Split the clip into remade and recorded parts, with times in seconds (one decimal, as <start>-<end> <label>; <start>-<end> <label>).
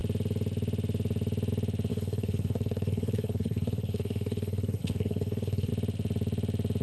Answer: 0.0-1.9 recorded; 1.9-5.7 remade; 5.7-6.8 recorded